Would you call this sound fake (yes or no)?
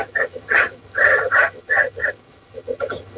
yes